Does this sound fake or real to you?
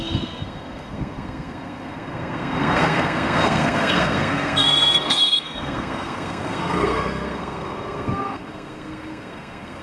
fake